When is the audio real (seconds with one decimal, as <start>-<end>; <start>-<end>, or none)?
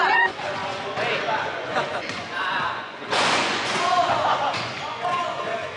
none